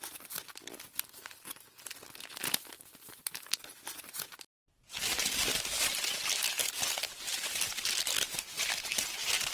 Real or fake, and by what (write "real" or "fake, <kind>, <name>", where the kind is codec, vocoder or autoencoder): real